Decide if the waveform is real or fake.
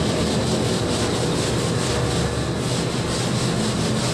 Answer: real